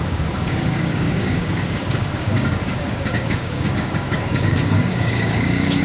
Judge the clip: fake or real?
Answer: fake